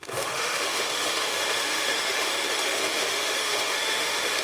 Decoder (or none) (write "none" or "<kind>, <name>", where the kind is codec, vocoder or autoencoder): autoencoder, DAC-VAE